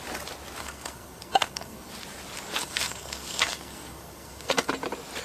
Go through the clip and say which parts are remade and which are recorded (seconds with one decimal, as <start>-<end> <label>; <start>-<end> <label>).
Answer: 0.0-0.6 recorded; 0.6-1.9 remade; 1.9-2.6 recorded; 2.6-4.7 remade; 4.7-5.2 recorded